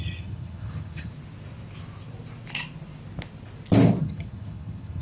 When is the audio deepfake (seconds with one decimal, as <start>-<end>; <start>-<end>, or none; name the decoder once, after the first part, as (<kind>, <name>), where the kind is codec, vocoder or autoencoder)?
0.0-1.1 (vocoder, HiFi-GAN); 4.0-5.0